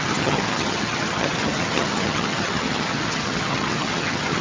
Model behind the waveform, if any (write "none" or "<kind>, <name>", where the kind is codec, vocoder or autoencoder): vocoder, HiFi-GAN